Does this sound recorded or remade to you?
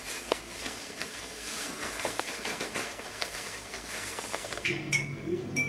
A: remade